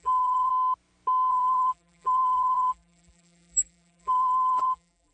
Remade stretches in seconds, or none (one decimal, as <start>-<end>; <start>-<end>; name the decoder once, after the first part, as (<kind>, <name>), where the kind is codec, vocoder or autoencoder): 0.0-0.5 (vocoder, BigVGAN v2); 1.3-5.1